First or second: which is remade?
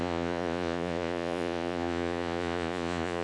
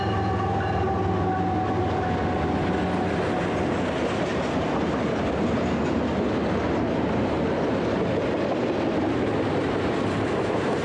first